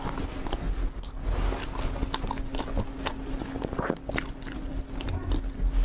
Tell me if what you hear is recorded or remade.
recorded